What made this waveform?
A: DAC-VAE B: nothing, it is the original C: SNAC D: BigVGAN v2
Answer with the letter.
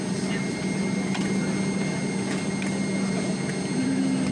B